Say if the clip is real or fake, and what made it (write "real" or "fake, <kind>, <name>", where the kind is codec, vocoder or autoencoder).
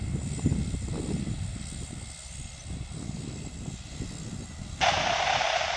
real